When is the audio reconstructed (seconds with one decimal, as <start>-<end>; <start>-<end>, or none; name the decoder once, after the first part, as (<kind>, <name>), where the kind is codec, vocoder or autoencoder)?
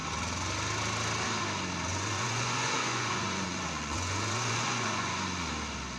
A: 1.9-5.5 (vocoder, Vocos)